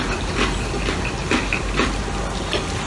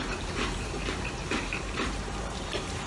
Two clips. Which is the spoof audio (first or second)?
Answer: second